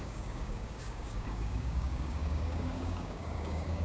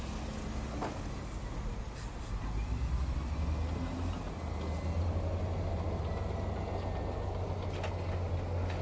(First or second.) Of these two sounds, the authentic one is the second